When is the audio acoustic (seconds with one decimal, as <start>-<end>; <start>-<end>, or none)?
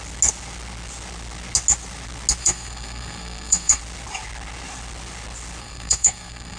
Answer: 0.0-2.4; 3.8-5.6